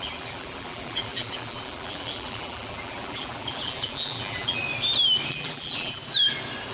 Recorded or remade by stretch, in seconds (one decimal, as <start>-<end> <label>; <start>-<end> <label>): 0.0-4.6 remade; 4.6-5.3 recorded; 5.3-6.0 remade; 6.0-6.7 recorded